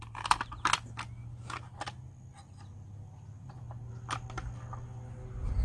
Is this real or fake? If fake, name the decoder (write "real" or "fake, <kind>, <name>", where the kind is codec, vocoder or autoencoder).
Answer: real